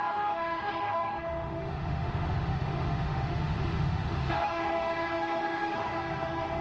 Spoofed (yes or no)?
yes